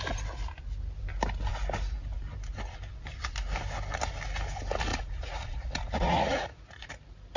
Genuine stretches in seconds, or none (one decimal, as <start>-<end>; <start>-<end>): 0.0-4.9; 6.9-7.4